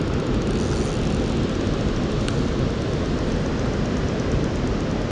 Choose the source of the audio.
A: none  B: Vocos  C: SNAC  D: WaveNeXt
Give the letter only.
A